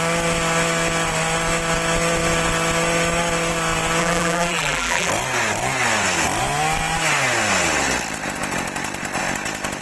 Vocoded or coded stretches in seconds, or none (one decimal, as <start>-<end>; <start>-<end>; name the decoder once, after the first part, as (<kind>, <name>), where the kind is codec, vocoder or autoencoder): 4.0-5.1 (vocoder, BigVGAN v2)